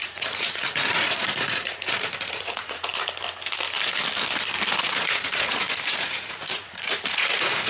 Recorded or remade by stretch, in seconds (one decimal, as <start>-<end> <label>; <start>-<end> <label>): 0.0-2.9 remade; 2.9-4.7 recorded; 4.7-7.7 remade